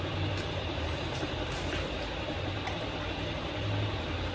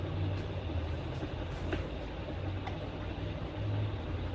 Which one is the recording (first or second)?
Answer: second